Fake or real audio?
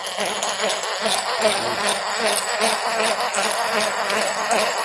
real